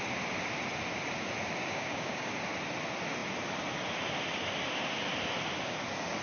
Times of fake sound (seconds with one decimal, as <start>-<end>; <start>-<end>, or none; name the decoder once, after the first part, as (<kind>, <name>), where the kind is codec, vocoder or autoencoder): 1.6-2.3 (codec, DAC)